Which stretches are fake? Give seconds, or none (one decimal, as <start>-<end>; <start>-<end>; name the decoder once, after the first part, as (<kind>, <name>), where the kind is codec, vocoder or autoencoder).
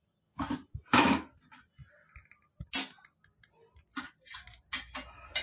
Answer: none